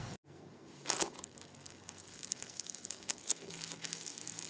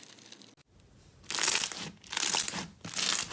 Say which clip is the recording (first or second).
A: second